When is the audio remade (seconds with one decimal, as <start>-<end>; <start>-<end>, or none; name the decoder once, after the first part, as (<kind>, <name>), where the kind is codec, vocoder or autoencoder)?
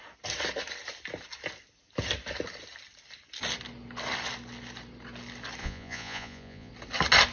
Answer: 5.6-6.7 (vocoder, Vocos)